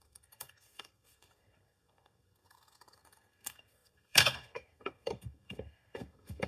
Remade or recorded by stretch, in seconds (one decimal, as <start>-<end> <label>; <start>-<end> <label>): 0.0-6.5 remade